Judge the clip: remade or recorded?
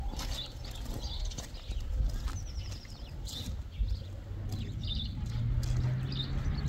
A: recorded